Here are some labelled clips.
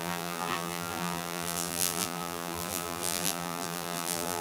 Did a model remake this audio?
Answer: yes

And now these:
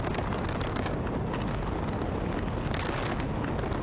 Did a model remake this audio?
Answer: no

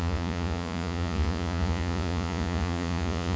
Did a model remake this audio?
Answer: yes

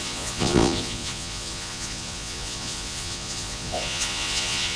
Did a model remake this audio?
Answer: yes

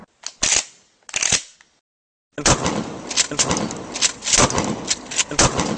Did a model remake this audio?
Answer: no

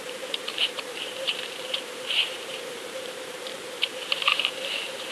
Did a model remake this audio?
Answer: yes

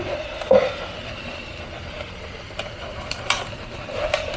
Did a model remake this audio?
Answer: no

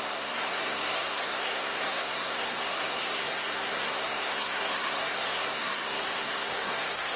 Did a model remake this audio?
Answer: yes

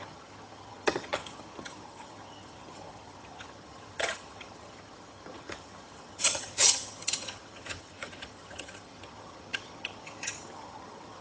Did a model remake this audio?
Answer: yes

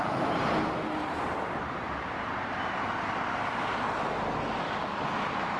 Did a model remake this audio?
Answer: no